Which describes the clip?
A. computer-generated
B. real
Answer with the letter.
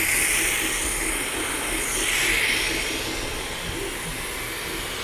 B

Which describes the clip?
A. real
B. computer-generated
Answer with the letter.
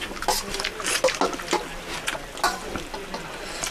A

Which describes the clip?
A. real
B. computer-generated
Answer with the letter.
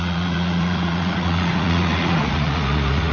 B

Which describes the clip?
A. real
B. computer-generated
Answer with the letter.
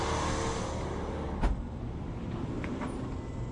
A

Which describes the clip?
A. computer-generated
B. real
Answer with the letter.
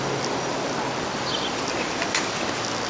B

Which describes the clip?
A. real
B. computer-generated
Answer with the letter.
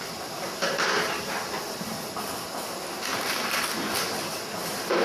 B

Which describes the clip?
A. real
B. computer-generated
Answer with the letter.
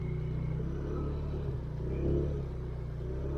A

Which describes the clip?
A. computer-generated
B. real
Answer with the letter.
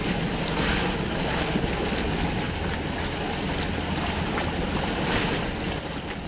B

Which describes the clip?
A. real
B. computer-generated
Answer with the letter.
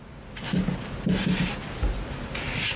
A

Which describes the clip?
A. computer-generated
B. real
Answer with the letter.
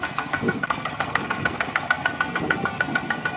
A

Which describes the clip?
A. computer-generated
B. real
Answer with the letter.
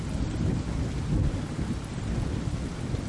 B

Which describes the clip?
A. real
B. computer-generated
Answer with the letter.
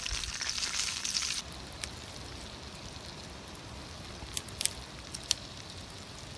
A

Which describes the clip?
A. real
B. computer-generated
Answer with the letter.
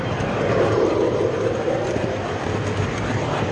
A